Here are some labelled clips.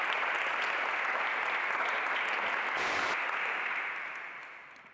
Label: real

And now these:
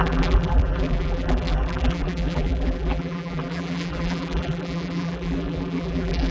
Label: fake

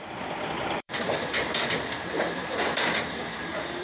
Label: fake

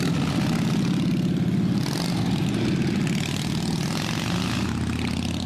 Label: real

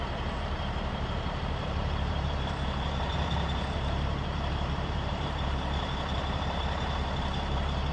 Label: fake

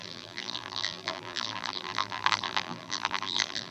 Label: fake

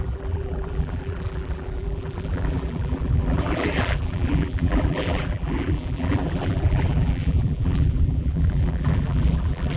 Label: fake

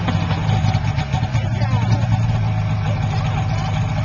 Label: real